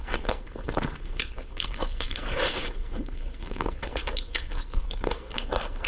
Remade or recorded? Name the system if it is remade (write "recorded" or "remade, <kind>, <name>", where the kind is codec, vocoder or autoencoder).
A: remade, codec, SNAC